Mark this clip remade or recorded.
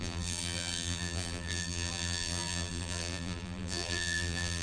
remade